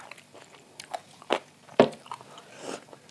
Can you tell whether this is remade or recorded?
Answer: recorded